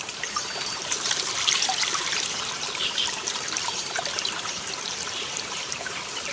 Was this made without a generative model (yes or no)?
no